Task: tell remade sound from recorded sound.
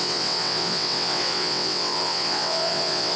remade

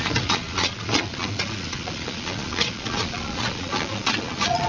remade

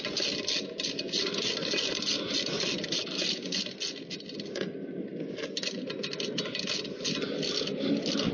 recorded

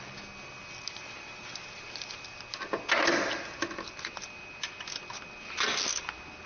recorded